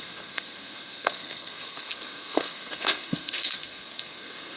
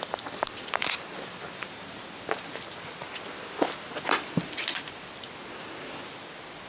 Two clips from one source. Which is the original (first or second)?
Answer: second